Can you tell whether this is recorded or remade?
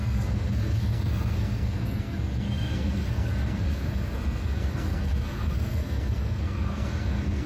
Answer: remade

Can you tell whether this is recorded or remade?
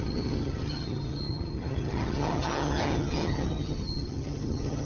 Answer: remade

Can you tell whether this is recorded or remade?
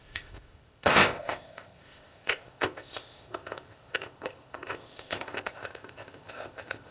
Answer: remade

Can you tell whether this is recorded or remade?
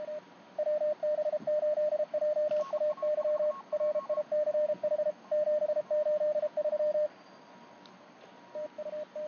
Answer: recorded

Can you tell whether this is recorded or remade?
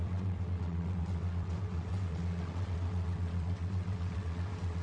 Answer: remade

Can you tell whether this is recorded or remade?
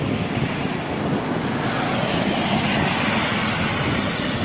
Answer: recorded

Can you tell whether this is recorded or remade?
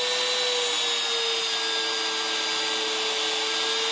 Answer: recorded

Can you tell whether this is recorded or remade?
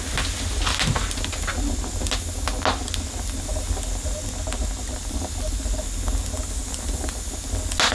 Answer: recorded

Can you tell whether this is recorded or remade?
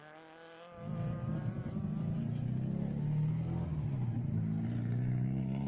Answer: recorded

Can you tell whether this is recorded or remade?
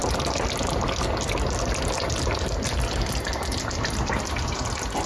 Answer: recorded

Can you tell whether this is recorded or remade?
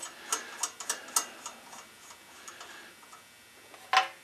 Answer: recorded